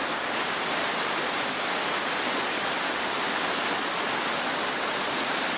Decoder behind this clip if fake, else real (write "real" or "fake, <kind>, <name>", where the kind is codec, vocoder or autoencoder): real